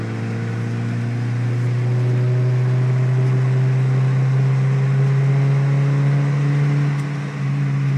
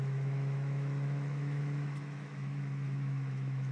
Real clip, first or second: first